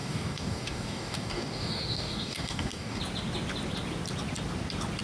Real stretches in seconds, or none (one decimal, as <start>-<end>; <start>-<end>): 3.0-5.0